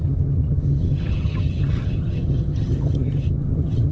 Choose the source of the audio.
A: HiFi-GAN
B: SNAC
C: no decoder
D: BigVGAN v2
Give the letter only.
A